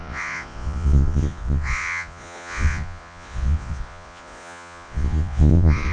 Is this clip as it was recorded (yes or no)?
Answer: no